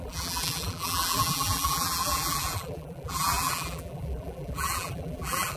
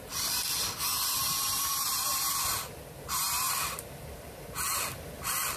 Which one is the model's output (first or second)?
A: first